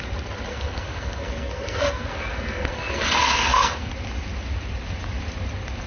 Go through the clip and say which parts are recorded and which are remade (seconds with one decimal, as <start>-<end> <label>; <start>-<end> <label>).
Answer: 0.0-0.5 recorded; 0.5-3.9 remade; 3.9-5.9 recorded